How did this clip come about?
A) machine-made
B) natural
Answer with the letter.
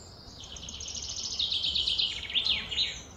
B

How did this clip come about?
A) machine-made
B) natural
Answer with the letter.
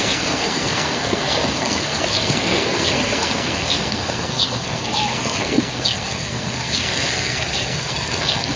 A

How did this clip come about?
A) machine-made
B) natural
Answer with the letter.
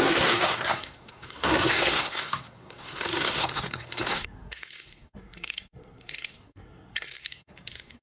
A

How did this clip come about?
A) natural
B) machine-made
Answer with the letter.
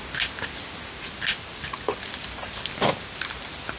A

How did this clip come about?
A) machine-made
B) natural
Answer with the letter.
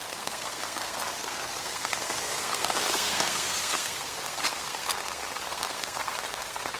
A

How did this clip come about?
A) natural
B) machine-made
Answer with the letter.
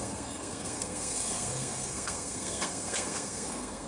B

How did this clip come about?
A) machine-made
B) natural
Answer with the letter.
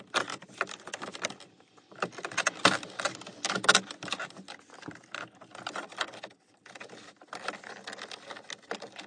B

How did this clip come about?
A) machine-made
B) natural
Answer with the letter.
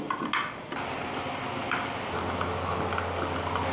B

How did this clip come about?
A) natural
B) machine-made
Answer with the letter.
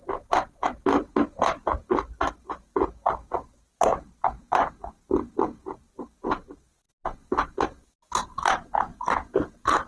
A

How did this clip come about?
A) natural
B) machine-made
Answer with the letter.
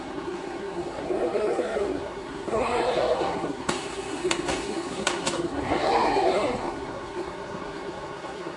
B